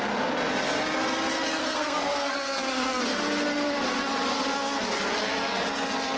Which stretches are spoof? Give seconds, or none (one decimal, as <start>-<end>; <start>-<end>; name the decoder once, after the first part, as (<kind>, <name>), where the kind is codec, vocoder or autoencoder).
1.6-3.0 (codec, SNAC)